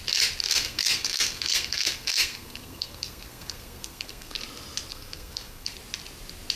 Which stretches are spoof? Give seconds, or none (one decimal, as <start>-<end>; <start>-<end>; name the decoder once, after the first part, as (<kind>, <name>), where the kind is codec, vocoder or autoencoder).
0.4-4.4 (codec, SNAC); 4.9-5.7